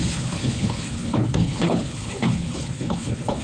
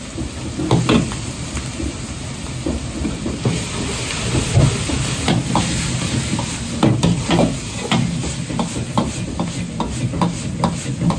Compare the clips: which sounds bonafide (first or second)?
second